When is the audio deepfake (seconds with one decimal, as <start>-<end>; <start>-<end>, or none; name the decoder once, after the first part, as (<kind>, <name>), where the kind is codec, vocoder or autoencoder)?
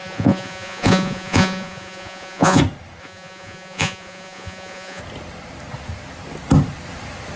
0.0-2.6 (vocoder, Vocos); 3.0-5.0